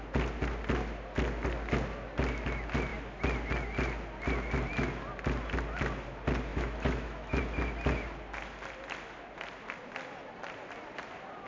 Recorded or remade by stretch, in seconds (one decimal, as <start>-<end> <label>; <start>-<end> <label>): 0.0-6.5 recorded; 6.5-7.4 remade; 7.4-11.5 recorded